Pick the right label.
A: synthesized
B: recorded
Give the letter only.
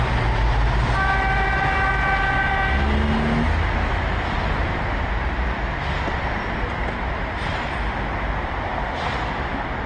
B